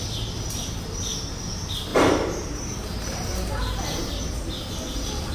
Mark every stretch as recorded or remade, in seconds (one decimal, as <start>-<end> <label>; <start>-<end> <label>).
0.0-1.9 recorded; 1.9-5.3 remade